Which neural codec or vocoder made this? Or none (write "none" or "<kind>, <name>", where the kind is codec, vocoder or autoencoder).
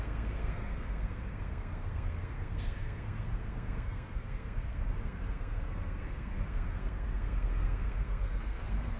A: codec, SNAC